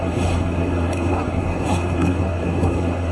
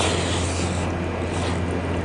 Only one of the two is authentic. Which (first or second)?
second